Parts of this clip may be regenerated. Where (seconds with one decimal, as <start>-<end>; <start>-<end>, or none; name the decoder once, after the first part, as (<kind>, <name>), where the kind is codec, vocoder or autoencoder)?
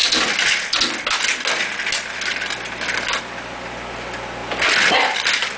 none